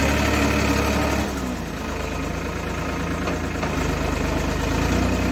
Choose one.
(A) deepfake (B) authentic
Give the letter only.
B